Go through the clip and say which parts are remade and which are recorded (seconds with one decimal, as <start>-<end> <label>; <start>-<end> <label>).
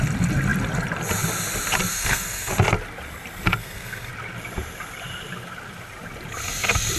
0.0-1.9 recorded; 1.9-2.5 remade; 2.5-3.6 recorded; 3.6-4.1 remade; 4.1-7.0 recorded